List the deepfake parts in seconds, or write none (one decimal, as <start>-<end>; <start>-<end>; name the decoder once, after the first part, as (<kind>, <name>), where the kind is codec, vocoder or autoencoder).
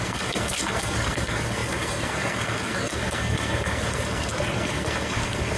0.0-5.6 (codec, SNAC)